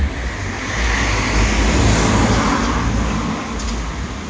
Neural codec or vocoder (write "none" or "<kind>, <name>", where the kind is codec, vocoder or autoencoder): none